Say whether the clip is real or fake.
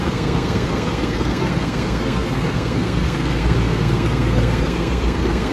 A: fake